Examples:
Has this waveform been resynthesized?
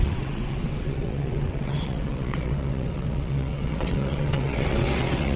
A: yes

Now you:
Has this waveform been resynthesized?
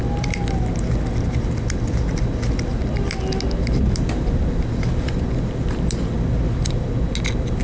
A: no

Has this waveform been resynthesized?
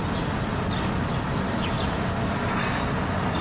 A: no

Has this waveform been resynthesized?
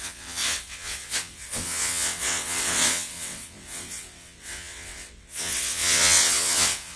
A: yes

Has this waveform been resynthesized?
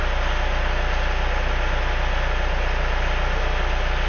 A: no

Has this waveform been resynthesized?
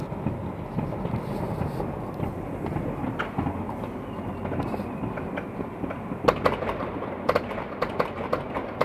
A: no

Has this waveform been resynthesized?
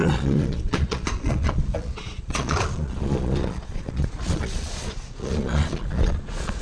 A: yes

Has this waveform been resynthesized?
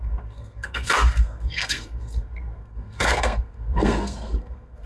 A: yes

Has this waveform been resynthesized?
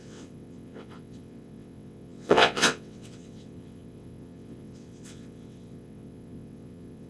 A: yes